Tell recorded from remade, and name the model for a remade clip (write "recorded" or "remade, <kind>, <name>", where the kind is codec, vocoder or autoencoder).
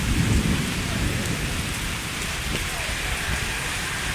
remade, vocoder, BigVGAN v2